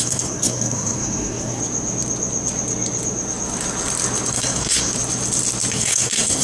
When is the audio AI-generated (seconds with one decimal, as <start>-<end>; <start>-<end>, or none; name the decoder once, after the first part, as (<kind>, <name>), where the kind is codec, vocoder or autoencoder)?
0.0-1.6 (codec, SNAC); 4.3-4.9; 5.7-6.4